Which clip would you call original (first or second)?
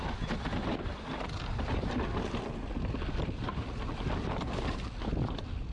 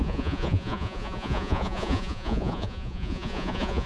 first